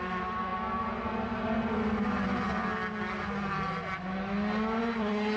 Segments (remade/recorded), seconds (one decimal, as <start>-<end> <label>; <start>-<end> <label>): 0.0-5.4 recorded